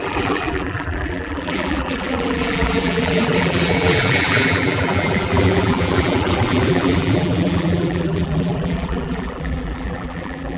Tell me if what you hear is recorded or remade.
remade